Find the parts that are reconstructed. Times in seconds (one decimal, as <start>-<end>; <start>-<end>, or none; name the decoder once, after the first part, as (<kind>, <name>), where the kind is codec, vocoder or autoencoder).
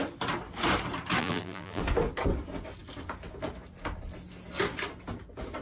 1.2-1.8 (vocoder, BigVGAN v2)